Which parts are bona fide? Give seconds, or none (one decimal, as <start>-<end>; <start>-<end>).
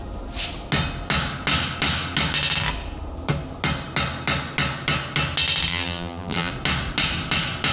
0.0-5.7; 6.5-7.7